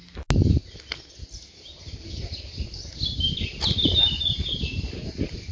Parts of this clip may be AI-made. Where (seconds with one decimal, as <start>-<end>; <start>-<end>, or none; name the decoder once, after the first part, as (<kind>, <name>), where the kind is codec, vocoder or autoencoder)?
none